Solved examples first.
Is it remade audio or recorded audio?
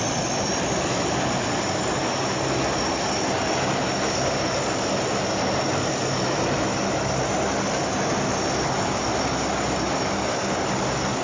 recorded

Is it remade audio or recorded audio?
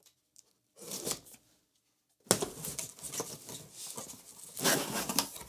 recorded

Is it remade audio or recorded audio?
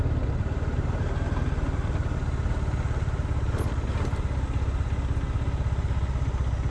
recorded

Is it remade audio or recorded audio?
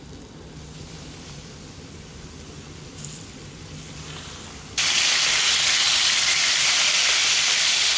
remade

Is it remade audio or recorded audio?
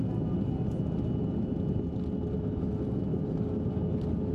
recorded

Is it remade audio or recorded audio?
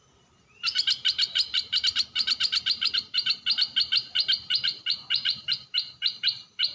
remade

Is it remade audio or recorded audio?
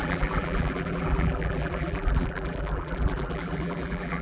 remade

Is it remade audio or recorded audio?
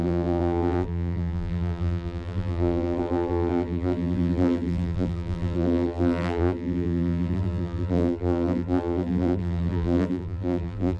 remade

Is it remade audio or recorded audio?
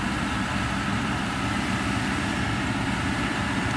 remade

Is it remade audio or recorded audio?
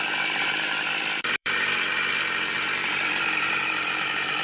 remade